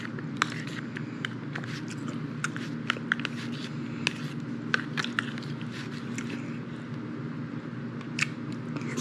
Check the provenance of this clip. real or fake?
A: real